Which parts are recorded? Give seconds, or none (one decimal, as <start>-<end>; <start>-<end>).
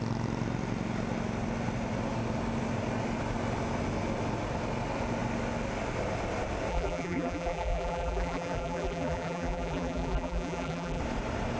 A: 0.0-6.7; 11.0-11.6